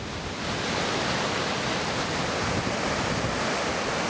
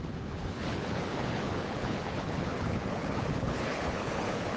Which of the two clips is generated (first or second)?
second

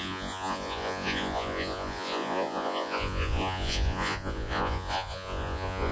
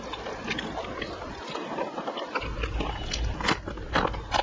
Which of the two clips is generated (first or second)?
first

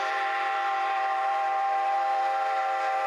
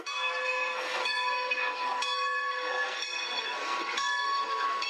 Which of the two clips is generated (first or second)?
second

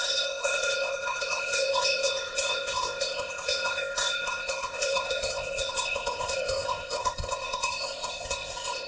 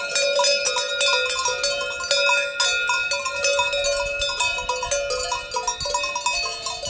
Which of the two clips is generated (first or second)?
first